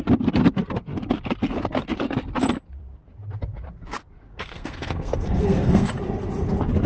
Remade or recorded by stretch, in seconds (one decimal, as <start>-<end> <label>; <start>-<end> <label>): 0.0-4.3 recorded; 4.3-5.9 remade; 5.9-6.9 recorded